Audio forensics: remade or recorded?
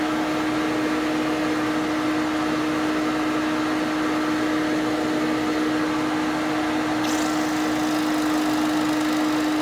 recorded